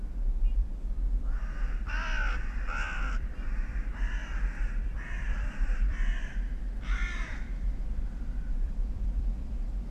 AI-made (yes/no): yes